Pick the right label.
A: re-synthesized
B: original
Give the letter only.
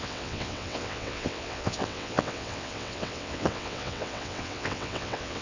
A